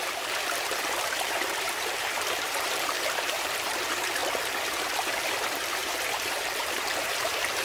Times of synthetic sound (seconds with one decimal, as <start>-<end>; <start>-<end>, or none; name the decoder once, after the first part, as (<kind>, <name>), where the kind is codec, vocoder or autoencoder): 0.0-4.2 (vocoder, BigVGAN v2); 4.8-7.6